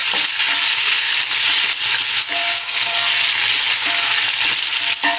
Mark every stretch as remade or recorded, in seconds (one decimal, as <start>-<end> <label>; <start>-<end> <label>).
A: 0.0-0.7 recorded; 0.7-1.1 remade; 1.1-2.1 recorded; 2.1-3.1 remade; 3.1-5.2 recorded